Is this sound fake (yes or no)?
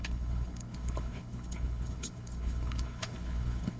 yes